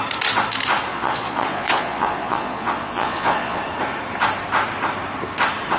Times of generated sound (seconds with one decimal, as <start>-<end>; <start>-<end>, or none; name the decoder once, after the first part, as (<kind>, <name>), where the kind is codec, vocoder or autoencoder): 0.9-3.6 (vocoder, Vocos)